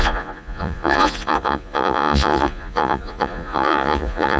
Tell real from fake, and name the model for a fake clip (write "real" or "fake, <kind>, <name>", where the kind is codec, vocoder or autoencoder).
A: fake, vocoder, Vocos